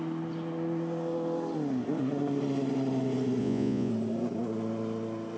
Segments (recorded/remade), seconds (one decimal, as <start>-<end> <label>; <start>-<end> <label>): 0.0-3.4 recorded; 3.4-3.9 remade; 3.9-5.4 recorded